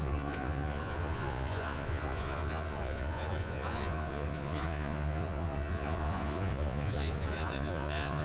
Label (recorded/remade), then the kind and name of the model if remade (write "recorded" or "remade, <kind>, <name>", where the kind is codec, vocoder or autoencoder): remade, vocoder, Vocos